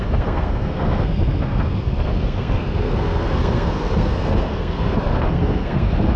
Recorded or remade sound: remade